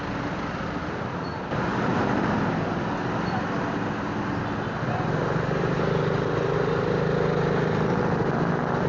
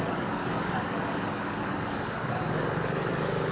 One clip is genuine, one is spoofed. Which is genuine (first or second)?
first